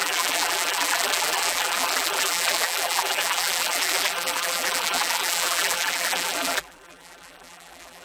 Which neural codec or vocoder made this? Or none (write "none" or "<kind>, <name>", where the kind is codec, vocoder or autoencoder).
vocoder, BigVGAN v2